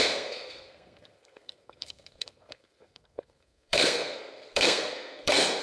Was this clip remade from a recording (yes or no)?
yes